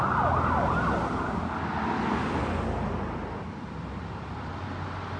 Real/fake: real